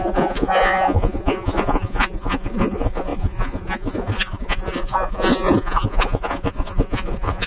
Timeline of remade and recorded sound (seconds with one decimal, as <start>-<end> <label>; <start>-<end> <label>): 0.0-7.5 remade